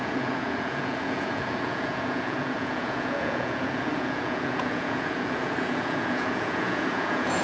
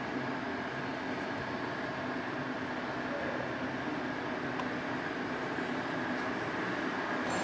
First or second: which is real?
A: second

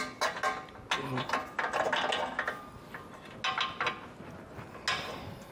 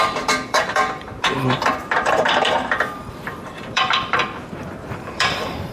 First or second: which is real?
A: first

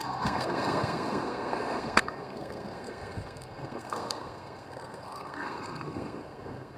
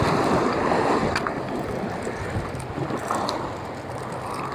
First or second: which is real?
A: second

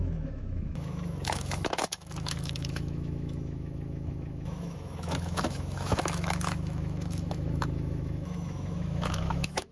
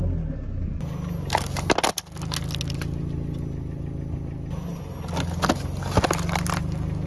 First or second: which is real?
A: second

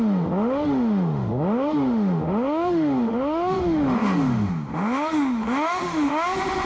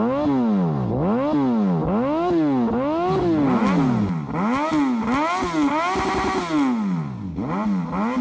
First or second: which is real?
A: second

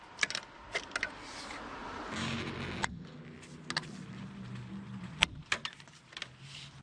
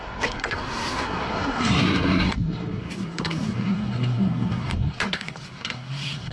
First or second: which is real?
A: first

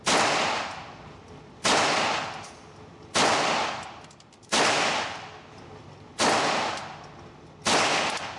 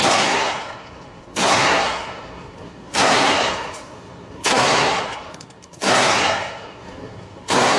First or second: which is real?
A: first